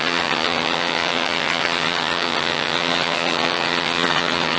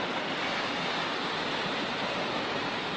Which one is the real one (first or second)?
second